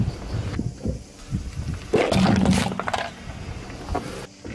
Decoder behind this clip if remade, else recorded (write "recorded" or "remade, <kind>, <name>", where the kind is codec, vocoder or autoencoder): recorded